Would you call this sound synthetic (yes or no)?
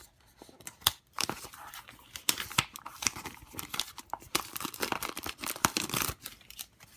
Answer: yes